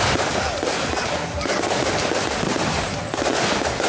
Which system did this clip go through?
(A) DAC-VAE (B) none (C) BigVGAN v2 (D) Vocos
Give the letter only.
B